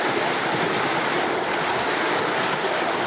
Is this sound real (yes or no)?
yes